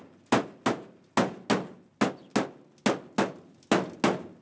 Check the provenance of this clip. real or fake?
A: real